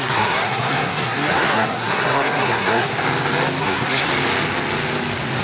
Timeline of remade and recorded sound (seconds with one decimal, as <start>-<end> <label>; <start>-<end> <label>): 0.0-2.9 remade; 2.9-3.6 recorded; 3.6-4.1 remade; 4.1-5.4 recorded

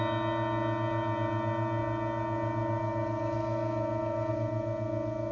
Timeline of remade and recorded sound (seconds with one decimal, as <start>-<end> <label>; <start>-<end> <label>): 0.0-5.3 recorded